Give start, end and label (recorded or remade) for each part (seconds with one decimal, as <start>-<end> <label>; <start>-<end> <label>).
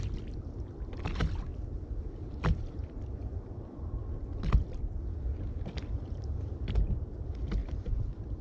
0.0-1.5 recorded; 1.5-2.8 remade; 2.8-7.6 recorded; 7.6-8.4 remade